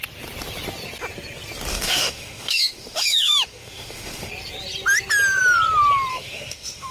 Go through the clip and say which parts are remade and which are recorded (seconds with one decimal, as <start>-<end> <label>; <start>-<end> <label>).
0.0-1.7 recorded; 1.7-4.3 remade; 4.3-6.1 recorded; 6.1-6.9 remade

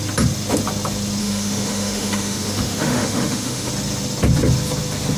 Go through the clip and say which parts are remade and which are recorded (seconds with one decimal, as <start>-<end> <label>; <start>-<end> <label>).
0.0-1.2 recorded; 1.2-3.7 remade; 3.7-5.2 recorded

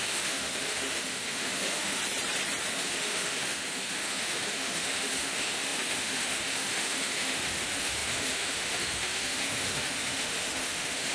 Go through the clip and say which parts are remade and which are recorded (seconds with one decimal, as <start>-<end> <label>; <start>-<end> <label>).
0.0-2.0 remade; 2.0-2.7 recorded; 2.7-11.1 remade

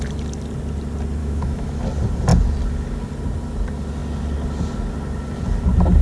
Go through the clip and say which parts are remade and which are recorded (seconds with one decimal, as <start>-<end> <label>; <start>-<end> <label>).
0.0-1.2 recorded; 1.2-1.8 remade; 1.8-6.0 recorded

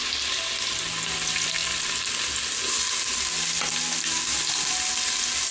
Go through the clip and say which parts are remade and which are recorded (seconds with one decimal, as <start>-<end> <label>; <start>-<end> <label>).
0.0-5.5 recorded

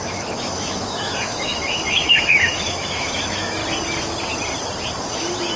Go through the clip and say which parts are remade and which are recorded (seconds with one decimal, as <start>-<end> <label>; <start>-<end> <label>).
0.0-3.6 remade; 3.6-5.1 recorded; 5.1-5.6 remade